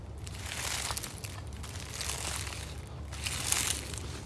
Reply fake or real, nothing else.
real